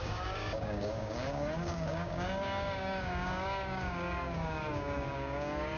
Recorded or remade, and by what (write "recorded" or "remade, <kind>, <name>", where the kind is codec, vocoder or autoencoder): remade, codec, DAC